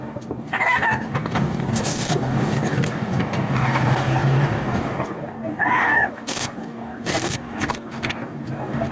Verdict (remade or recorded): remade